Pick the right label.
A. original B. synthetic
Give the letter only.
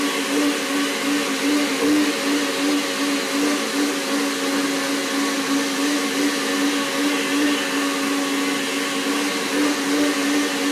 A